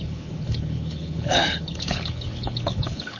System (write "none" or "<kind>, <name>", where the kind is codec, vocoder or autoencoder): codec, HILCodec